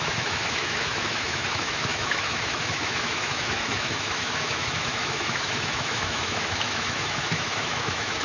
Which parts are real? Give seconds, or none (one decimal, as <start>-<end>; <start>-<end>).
none